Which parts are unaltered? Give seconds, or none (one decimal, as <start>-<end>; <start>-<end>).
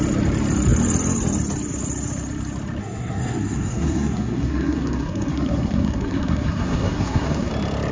0.0-2.8; 7.5-7.9